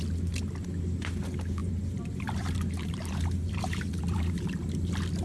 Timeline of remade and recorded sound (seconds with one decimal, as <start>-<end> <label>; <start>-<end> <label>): 0.0-1.6 recorded; 1.6-4.7 remade; 4.7-5.2 recorded